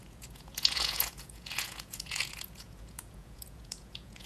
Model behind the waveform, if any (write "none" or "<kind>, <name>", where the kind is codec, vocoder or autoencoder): vocoder, Vocos